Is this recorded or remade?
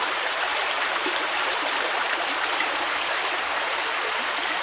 remade